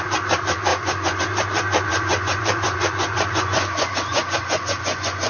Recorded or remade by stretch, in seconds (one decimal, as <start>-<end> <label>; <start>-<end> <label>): 0.0-0.7 recorded; 0.7-1.2 remade; 1.2-1.9 recorded; 1.9-5.3 remade